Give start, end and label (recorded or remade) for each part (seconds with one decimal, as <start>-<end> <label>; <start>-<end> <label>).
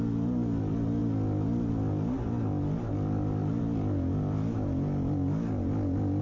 0.0-6.2 recorded